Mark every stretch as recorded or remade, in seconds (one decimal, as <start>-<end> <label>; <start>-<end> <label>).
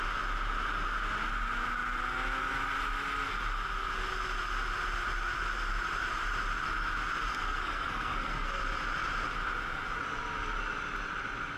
0.0-7.3 recorded; 7.3-8.6 remade; 8.6-11.6 recorded